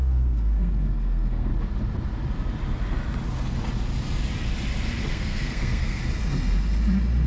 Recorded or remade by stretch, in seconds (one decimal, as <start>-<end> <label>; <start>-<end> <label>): 0.0-1.5 remade; 1.5-5.1 recorded; 5.1-6.0 remade; 6.0-7.3 recorded